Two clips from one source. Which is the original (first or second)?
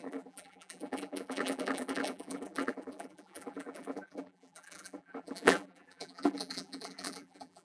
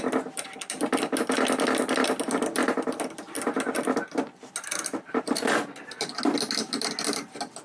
second